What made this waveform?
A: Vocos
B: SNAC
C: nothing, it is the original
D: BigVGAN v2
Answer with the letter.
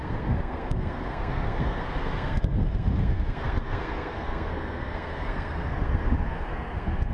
B